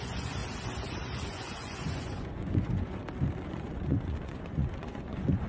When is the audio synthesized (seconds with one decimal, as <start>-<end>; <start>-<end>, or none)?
0.0-0.4; 1.3-3.0; 3.5-5.5